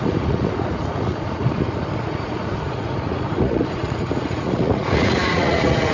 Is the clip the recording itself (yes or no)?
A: no